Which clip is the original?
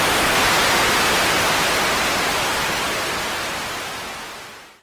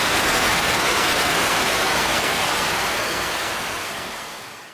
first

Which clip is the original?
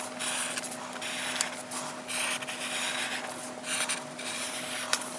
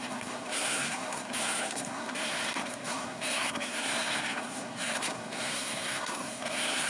first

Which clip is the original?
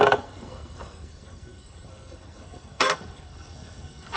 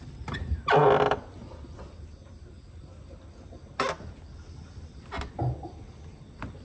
second